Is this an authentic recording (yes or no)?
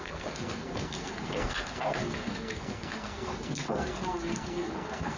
no